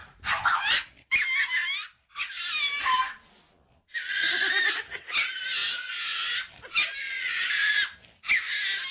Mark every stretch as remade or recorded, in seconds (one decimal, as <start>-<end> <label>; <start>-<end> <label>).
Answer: 0.0-0.8 remade; 0.8-7.6 recorded; 7.6-8.3 remade; 8.3-8.9 recorded